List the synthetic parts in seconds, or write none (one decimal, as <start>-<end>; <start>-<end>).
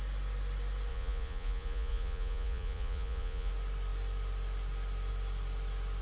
0.9-3.5